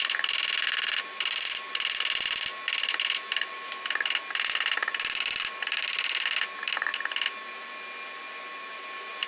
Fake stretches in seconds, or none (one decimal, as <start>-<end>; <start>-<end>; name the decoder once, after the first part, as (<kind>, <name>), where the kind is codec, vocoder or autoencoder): 0.0-2.6 (vocoder, BigVGAN v2); 5.4-6.9; 8.9-9.3